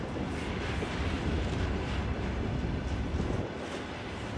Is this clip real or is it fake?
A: real